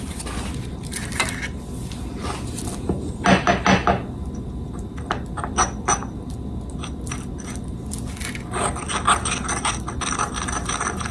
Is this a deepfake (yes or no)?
no